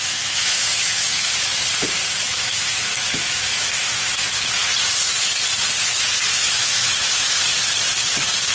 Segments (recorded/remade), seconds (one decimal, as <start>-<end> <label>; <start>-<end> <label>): 0.0-1.5 remade; 1.5-2.2 recorded; 2.2-4.7 remade; 4.7-5.8 recorded; 5.8-7.5 remade; 7.5-8.5 recorded